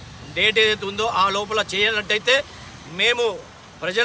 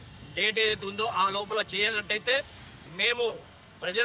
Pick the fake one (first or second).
second